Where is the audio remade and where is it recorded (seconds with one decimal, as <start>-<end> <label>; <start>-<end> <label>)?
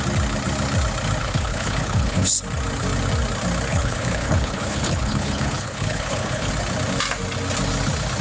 0.0-1.2 recorded; 1.2-2.3 remade; 2.3-3.7 recorded; 3.7-6.5 remade; 6.5-8.2 recorded